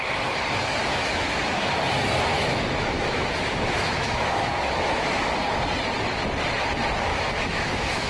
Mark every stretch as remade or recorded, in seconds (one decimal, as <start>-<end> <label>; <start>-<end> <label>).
0.0-0.8 recorded; 0.8-1.6 remade; 1.6-2.3 recorded; 2.3-5.3 remade; 5.3-7.1 recorded; 7.1-8.1 remade